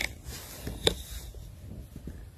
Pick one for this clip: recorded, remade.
recorded